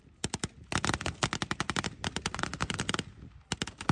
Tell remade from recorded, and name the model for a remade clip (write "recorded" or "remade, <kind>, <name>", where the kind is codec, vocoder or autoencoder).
recorded